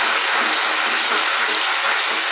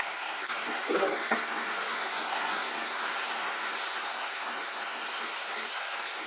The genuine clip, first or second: first